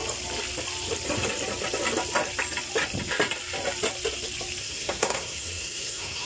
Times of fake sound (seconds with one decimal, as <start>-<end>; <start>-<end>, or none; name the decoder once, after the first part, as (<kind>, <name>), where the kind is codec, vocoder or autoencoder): 4.6-6.3 (codec, SNAC)